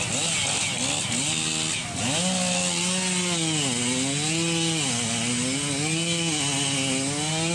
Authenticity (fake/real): real